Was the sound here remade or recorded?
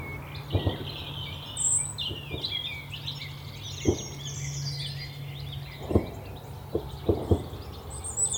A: recorded